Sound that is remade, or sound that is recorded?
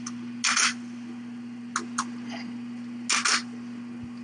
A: recorded